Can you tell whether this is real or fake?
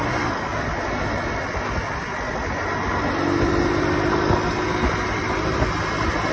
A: real